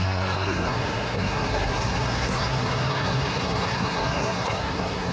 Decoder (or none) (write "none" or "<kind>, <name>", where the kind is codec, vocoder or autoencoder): codec, SNAC